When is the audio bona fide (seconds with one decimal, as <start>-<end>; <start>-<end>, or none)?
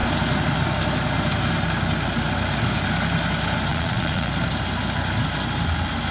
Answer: 0.0-3.7; 4.3-6.1